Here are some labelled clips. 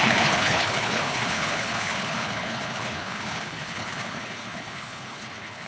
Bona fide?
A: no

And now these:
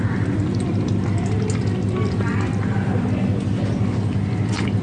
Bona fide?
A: yes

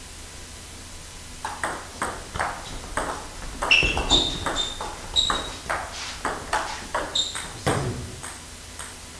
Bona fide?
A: yes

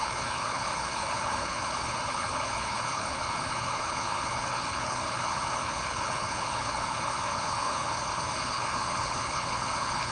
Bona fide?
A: no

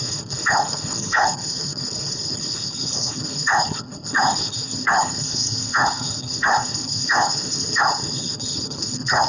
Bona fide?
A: no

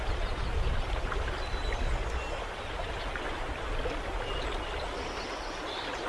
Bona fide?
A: yes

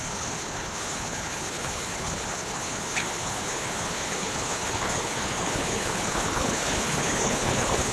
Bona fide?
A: no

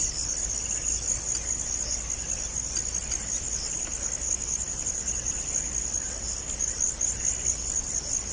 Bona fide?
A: yes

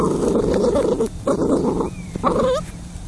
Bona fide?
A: yes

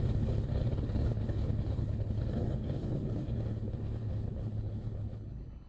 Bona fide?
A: no